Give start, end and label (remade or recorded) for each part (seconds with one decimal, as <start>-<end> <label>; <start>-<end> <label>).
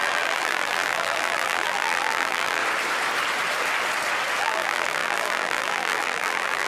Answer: 0.0-2.6 remade; 2.6-4.4 recorded; 4.4-6.7 remade